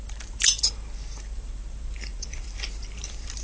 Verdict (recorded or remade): remade